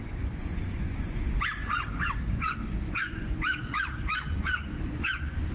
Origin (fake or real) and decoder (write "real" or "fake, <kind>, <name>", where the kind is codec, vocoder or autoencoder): fake, vocoder, Vocos